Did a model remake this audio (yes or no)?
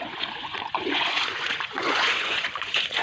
yes